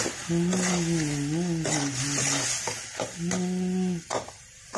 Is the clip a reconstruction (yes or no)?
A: no